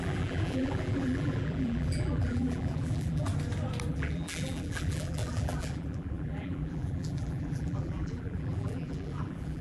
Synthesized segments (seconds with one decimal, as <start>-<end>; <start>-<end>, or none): 0.0-3.3; 3.9-9.6

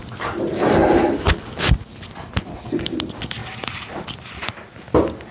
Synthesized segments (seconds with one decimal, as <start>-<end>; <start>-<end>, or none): 3.4-4.5

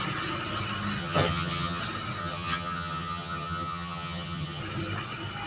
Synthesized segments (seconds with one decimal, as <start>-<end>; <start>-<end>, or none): 1.0-1.8; 2.2-4.6

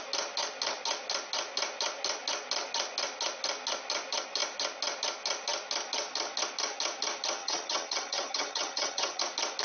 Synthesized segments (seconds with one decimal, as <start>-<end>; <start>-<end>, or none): 7.4-9.2

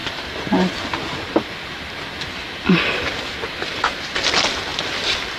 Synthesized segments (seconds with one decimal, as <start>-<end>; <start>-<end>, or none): none

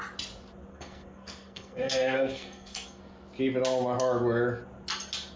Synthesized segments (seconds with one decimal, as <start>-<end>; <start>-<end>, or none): 0.7-3.0

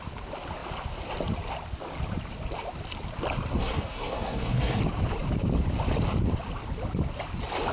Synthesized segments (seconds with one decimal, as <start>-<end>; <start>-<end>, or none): 3.6-4.8